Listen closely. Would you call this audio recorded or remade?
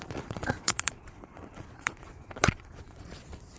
remade